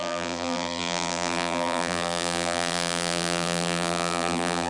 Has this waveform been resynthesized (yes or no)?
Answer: yes